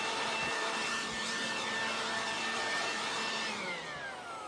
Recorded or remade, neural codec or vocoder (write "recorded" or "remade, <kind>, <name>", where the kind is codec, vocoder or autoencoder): remade, vocoder, BigVGAN v2